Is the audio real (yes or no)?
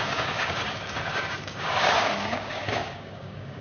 no